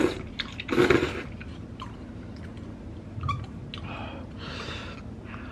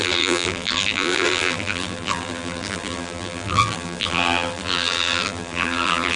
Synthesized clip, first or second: second